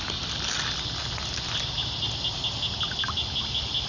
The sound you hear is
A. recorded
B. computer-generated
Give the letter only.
A